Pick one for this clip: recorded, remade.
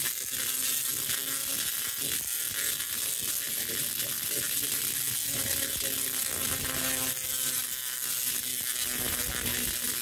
recorded